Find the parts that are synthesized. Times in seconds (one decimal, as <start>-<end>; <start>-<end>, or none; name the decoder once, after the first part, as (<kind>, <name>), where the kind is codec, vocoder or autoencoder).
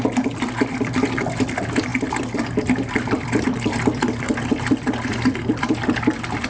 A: none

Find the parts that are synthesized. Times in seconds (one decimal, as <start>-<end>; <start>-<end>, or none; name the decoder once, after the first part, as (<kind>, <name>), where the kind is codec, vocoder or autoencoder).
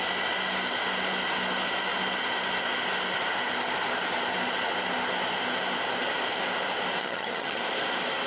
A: 7.0-7.6 (vocoder, HiFi-GAN)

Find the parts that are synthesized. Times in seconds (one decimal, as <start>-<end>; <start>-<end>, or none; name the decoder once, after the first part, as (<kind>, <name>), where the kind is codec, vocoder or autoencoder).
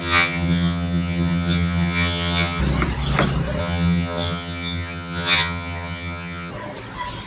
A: 0.0-2.6 (vocoder, HiFi-GAN); 3.6-6.5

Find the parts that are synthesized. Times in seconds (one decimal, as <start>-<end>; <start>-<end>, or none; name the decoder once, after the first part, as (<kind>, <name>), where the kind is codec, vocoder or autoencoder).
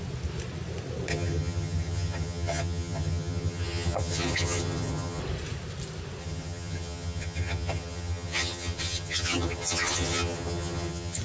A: 1.1-5.2 (vocoder, HiFi-GAN); 6.2-11.2